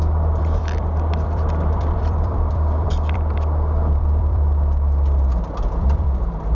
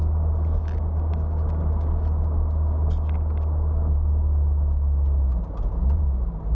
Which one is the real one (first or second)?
second